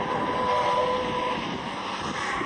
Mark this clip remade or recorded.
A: recorded